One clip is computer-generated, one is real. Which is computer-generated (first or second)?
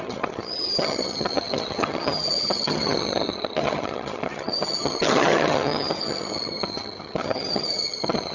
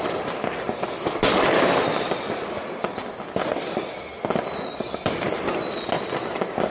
first